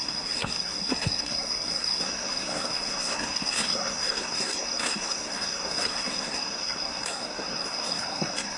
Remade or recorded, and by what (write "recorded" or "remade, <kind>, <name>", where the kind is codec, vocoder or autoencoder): remade, codec, SNAC